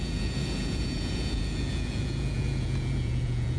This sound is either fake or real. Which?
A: fake